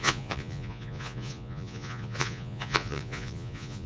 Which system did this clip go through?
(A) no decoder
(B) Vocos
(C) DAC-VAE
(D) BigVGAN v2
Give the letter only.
B